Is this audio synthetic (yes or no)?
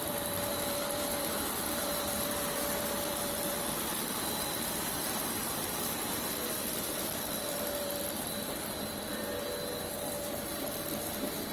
yes